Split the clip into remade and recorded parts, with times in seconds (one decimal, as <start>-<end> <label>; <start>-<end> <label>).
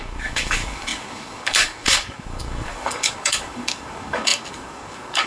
0.0-5.3 remade